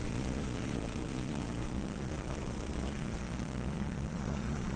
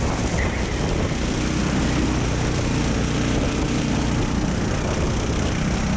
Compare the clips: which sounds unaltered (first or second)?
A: second